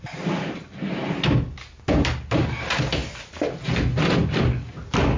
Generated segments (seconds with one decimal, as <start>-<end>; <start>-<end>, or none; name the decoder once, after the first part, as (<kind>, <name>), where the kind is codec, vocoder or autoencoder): none